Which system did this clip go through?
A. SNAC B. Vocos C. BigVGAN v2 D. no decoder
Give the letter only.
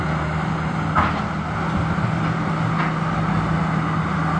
D